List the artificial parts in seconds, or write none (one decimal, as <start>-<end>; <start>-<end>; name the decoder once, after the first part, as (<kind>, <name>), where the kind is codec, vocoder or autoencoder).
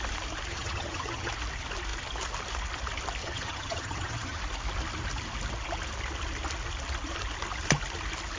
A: 0.5-1.3 (vocoder, HiFi-GAN); 3.2-4.4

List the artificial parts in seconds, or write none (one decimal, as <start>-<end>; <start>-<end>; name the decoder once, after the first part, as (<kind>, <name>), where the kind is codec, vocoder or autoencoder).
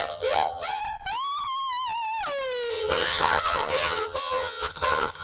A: 0.0-0.8 (vocoder, HiFi-GAN); 2.7-5.2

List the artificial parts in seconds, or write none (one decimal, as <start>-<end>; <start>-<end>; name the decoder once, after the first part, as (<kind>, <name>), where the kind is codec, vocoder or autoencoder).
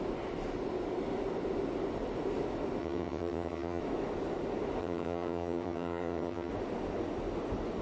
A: 2.8-3.8 (vocoder, HiFi-GAN); 4.8-6.5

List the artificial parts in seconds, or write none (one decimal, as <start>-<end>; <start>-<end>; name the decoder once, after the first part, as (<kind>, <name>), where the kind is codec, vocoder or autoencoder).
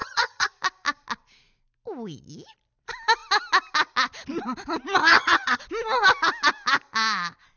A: 0.0-0.5 (vocoder, HiFi-GAN); 5.0-5.6